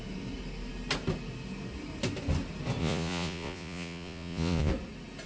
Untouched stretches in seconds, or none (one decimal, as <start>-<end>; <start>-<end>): 0.0-2.8; 4.7-5.3